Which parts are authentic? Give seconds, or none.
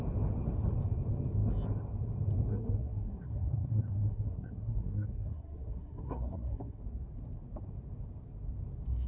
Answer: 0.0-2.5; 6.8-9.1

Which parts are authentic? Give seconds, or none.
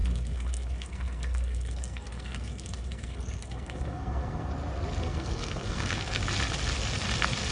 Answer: 4.5-5.0; 6.2-7.5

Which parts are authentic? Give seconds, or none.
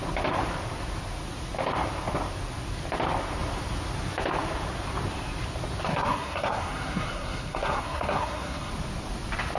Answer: 0.0-5.9; 8.7-9.6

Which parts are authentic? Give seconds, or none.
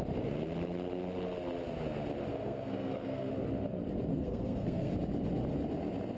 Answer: 0.0-2.3; 3.3-4.1; 4.9-6.2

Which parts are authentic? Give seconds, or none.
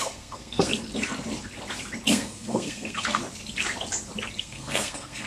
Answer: 0.7-2.1; 3.2-4.4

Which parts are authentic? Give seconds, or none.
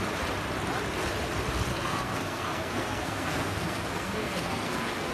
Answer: 0.0-1.7